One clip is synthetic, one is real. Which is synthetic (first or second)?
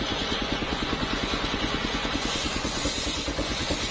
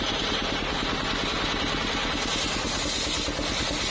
first